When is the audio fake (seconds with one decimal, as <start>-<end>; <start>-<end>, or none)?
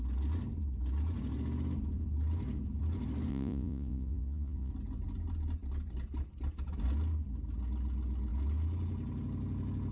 3.3-4.7